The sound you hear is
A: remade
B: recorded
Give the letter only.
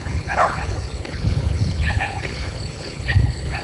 A